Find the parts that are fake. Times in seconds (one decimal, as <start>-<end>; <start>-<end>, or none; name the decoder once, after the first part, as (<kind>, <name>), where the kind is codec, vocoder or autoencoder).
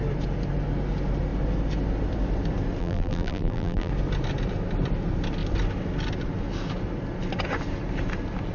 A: 2.8-3.9 (vocoder, BigVGAN v2)